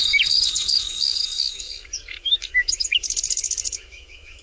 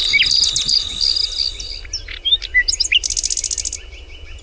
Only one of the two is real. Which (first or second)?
second